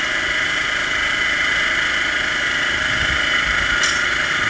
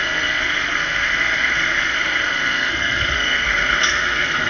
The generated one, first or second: second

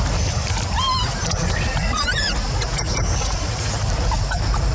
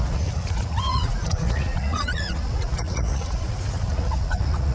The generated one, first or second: second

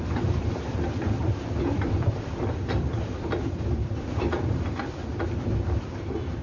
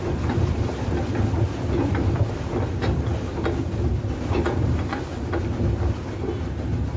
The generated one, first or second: first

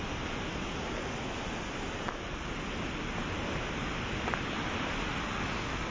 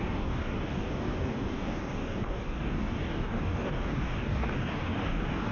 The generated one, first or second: second